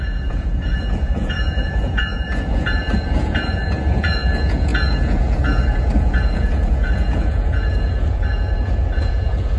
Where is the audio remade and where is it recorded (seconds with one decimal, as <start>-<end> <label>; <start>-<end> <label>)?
0.0-9.6 remade